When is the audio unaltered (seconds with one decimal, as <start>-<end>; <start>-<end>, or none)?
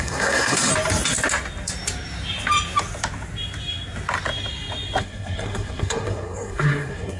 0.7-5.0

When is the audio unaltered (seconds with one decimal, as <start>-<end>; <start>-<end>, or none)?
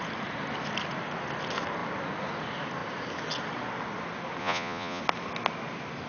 0.0-4.4; 5.0-6.1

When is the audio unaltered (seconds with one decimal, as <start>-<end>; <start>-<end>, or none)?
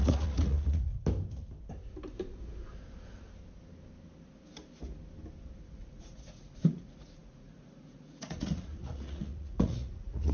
0.9-5.6